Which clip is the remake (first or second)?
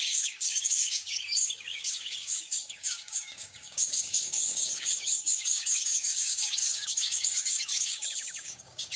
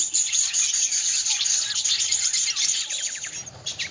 first